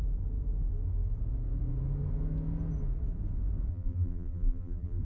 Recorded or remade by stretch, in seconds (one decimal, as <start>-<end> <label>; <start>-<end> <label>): 0.0-3.7 recorded; 3.7-5.0 remade